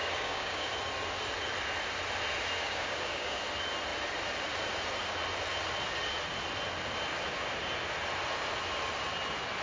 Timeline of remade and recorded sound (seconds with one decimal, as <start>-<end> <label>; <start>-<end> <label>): 0.0-0.7 remade; 0.7-2.6 recorded; 2.6-3.4 remade; 3.4-9.6 recorded